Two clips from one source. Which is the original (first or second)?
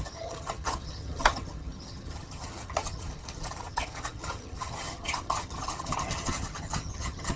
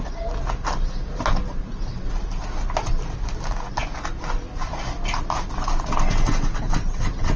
second